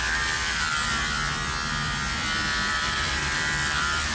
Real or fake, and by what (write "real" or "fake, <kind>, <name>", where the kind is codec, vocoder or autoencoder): fake, vocoder, BigVGAN v2